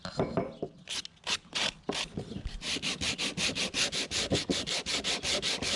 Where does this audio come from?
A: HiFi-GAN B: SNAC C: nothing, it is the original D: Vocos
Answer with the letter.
C